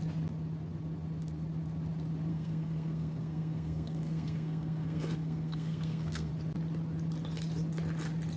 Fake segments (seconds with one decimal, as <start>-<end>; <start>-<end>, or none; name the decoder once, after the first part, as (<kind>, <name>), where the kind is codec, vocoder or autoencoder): 2.3-6.3 (codec, SNAC)

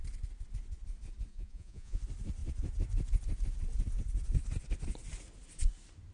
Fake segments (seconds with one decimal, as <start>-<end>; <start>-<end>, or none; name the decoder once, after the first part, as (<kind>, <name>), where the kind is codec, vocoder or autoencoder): 1.3-2.0 (vocoder, Vocos)

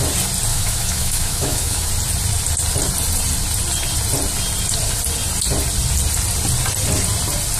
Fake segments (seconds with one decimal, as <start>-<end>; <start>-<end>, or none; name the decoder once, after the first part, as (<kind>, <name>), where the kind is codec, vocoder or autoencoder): 0.5-1.9 (autoencoder, DAC-VAE)

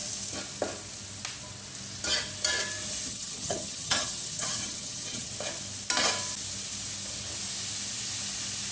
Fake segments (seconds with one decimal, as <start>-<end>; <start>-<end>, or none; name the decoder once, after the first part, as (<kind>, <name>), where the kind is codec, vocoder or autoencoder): 3.1-5.3 (vocoder, HiFi-GAN)